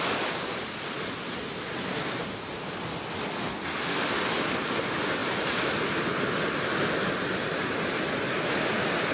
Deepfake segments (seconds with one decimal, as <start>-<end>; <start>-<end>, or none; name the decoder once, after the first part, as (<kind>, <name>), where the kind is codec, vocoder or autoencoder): 3.6-4.1 (autoencoder, DAC-VAE)